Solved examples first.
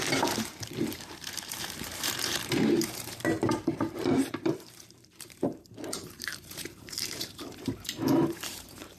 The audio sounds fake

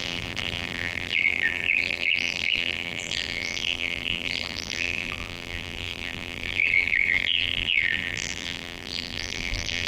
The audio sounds fake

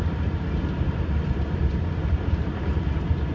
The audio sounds real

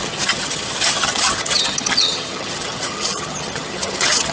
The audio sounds fake